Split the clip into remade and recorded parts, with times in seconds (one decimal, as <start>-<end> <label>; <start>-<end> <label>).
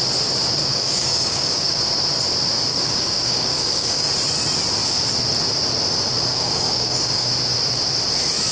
0.0-0.6 recorded; 0.6-1.8 remade; 1.8-2.7 recorded; 2.7-4.1 remade; 4.1-6.3 recorded; 6.3-7.3 remade; 7.3-8.5 recorded